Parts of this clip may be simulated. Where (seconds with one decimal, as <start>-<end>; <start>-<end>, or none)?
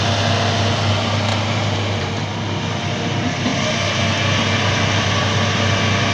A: 1.3-2.1